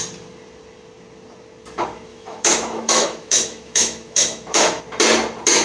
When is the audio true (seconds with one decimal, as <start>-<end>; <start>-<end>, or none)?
0.0-2.1; 4.8-5.6